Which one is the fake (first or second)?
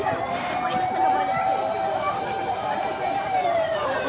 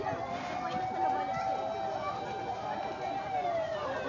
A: first